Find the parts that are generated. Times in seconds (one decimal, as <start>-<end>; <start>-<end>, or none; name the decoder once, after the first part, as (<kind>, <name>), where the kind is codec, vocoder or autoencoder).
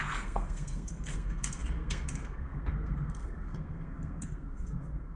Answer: 0.0-5.2 (codec, SNAC)